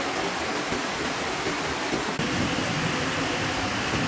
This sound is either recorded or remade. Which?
recorded